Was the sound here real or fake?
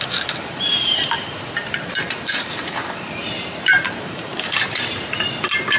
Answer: fake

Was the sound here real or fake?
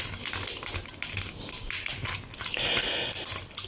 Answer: real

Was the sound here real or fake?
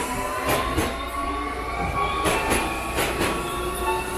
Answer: real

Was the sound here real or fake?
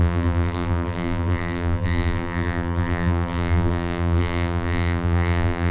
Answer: fake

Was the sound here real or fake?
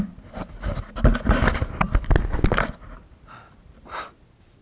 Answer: real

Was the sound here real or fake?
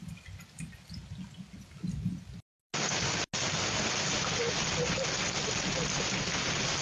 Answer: real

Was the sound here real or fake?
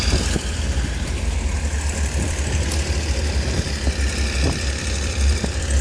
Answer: fake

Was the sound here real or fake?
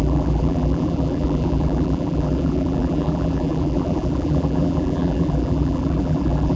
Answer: fake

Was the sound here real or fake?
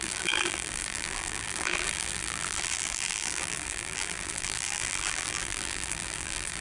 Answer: fake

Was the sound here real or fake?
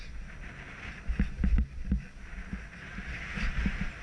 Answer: real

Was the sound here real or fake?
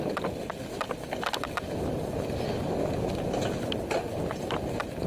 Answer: real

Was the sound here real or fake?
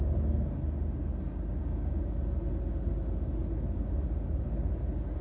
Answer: real